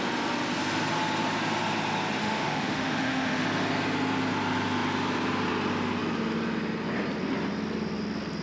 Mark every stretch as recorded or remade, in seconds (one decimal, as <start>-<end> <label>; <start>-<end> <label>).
0.0-2.2 recorded; 2.2-3.4 remade; 3.4-8.4 recorded